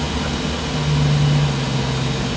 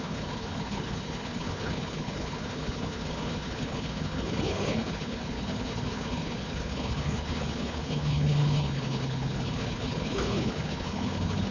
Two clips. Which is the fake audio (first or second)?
second